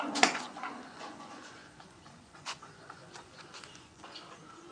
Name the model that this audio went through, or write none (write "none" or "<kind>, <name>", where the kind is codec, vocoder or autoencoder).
vocoder, Vocos